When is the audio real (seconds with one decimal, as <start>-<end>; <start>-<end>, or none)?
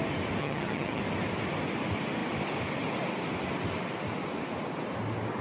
0.0-0.4; 1.0-5.4